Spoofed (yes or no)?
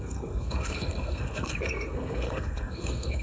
yes